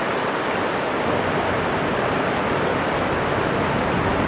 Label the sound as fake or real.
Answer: real